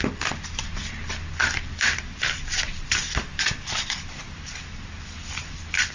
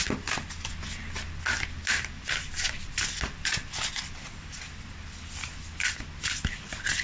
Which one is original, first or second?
second